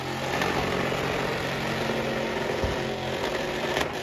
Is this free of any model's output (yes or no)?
yes